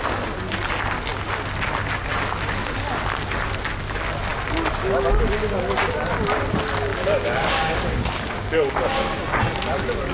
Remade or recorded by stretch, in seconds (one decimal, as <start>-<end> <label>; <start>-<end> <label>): 0.0-6.9 recorded; 6.9-9.2 remade; 9.2-10.1 recorded